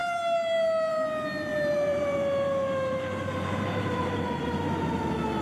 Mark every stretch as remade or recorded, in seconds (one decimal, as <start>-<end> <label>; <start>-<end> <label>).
0.0-1.5 recorded; 1.5-4.7 remade; 4.7-5.4 recorded